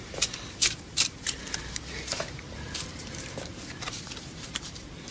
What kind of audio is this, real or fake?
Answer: fake